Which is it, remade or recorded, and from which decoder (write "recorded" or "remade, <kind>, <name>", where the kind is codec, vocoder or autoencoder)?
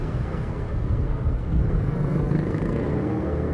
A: remade, codec, SNAC